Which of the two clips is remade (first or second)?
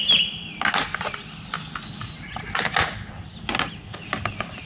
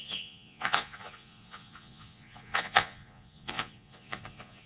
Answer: second